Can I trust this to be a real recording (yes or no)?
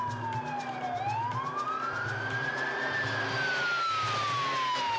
yes